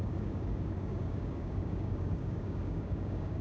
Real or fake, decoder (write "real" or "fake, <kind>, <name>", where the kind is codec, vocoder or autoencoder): fake, codec, DAC